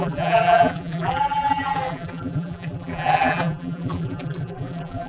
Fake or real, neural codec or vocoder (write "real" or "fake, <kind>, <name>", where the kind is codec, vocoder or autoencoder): fake, vocoder, BigVGAN v2